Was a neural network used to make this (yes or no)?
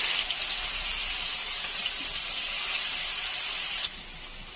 no